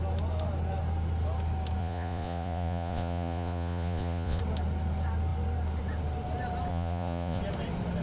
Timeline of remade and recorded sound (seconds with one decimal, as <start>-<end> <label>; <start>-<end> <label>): 0.0-1.8 recorded; 1.8-4.4 remade; 4.4-6.7 recorded; 6.7-7.4 remade; 7.4-8.0 recorded